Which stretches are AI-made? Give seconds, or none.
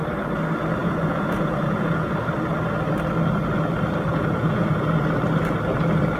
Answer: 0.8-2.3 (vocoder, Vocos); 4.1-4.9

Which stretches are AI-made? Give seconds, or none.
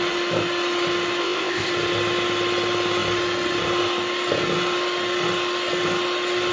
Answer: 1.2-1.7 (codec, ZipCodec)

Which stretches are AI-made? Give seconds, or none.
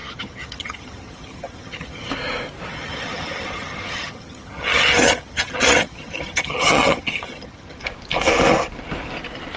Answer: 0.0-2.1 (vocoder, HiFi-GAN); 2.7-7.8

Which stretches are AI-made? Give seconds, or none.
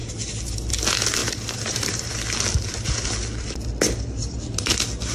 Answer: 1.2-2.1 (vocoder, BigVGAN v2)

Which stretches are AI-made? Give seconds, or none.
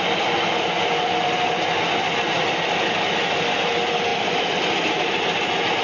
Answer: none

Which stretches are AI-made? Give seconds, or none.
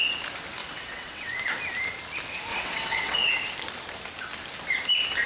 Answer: 0.6-1.3 (vocoder, WaveNeXt); 2.5-3.3